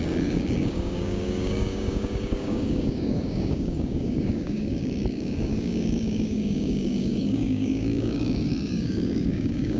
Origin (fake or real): fake